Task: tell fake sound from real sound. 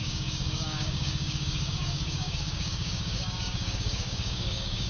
fake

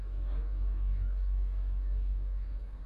fake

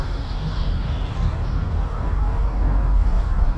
fake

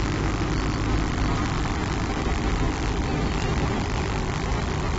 real